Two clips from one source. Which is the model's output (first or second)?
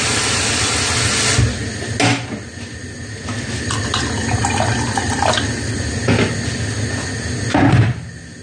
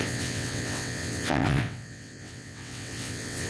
second